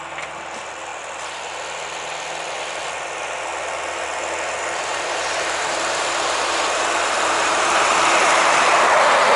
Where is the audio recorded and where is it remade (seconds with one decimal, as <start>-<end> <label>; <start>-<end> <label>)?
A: 0.0-4.9 recorded; 4.9-8.7 remade; 8.7-9.4 recorded